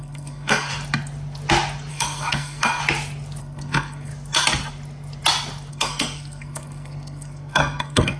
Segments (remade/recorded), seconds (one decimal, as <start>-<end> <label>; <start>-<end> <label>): 0.0-0.7 remade; 0.7-1.9 recorded; 1.9-2.8 remade; 2.8-3.4 recorded; 3.4-4.1 remade; 4.1-5.7 recorded; 5.7-8.2 remade